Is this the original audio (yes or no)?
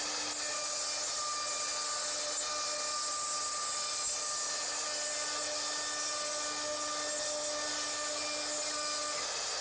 yes